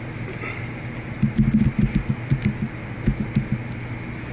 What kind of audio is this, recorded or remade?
recorded